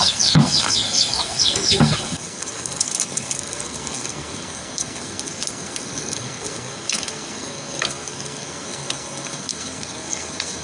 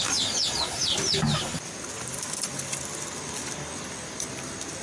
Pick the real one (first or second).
second